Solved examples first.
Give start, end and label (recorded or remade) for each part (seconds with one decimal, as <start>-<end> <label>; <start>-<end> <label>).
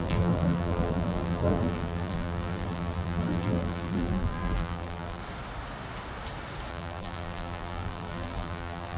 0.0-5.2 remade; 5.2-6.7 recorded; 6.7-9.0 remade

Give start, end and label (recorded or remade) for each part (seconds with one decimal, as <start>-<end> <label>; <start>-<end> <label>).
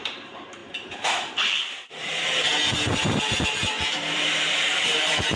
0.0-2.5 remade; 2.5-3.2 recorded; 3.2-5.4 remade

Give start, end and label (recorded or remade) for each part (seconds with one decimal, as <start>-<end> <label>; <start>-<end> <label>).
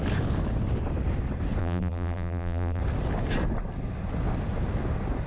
0.0-1.6 recorded; 1.6-2.8 remade; 2.8-5.3 recorded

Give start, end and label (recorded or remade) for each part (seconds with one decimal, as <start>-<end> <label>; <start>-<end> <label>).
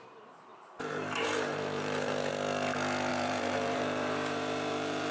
0.0-0.5 recorded; 0.5-2.3 remade; 2.3-3.1 recorded; 3.1-5.1 remade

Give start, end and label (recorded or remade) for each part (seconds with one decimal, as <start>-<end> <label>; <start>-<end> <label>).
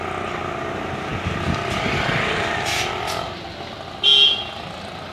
0.0-1.1 recorded; 1.1-2.9 remade; 2.9-5.1 recorded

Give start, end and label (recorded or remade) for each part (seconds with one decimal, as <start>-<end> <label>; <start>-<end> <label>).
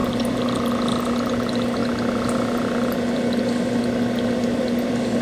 0.0-0.7 remade; 0.7-5.2 recorded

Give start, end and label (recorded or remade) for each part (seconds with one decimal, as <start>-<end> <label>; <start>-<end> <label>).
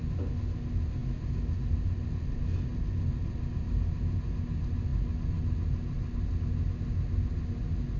0.0-8.0 recorded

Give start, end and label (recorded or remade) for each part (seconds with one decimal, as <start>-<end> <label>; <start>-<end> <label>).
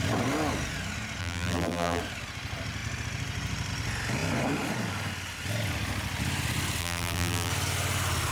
0.0-1.2 recorded; 1.2-2.0 remade; 2.0-6.8 recorded; 6.8-7.5 remade; 7.5-8.3 recorded